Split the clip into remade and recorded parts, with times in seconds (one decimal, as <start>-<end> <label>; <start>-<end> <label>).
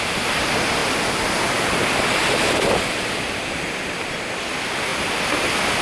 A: 0.0-0.8 recorded; 0.8-4.1 remade; 4.1-4.9 recorded; 4.9-5.8 remade